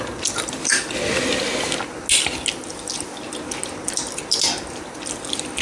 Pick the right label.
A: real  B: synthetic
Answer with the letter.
A